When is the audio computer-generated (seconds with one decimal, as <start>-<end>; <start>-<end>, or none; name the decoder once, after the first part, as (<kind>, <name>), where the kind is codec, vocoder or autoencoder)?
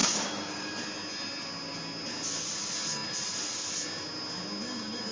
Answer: 0.0-0.7 (codec, DAC)